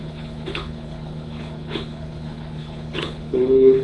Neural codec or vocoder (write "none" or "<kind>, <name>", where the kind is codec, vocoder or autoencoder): codec, HILCodec